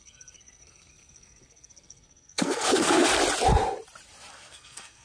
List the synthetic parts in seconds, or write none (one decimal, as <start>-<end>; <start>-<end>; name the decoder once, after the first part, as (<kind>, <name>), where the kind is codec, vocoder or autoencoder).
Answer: 0.0-3.1 (codec, SNAC); 4.3-5.0